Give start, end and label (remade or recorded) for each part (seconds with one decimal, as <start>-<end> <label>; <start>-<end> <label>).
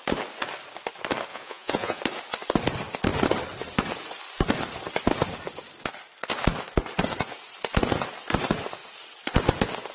0.0-1.3 recorded; 1.3-2.0 remade; 2.0-9.9 recorded